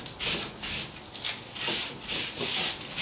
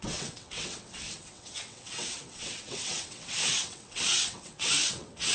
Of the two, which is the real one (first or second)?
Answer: first